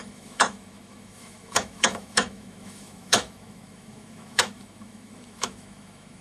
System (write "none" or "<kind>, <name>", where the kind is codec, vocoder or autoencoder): autoencoder, DAC-VAE